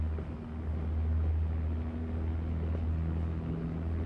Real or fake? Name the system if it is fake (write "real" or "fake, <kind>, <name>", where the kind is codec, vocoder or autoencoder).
real